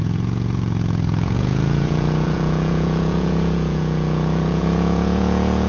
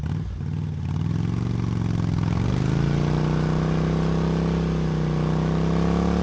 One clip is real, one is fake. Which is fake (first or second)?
first